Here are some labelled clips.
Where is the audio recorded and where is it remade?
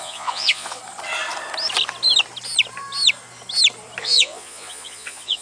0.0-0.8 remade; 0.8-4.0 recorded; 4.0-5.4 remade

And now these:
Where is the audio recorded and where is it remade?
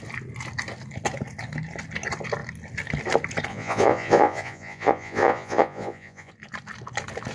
0.0-3.5 recorded; 3.5-6.3 remade; 6.3-7.3 recorded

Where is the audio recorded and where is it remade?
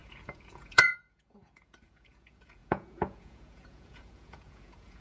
0.0-5.0 remade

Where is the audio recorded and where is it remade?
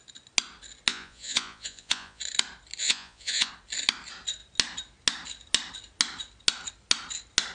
0.0-0.9 recorded; 0.9-2.2 remade; 2.2-2.8 recorded; 2.8-3.5 remade; 3.5-7.5 recorded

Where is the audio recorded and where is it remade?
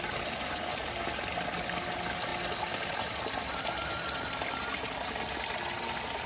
0.0-6.3 recorded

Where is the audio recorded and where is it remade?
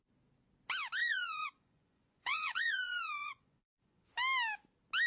0.0-1.0 recorded; 1.0-4.1 remade; 4.1-5.1 recorded